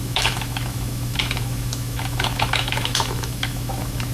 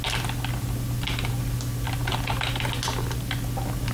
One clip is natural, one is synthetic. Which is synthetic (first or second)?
first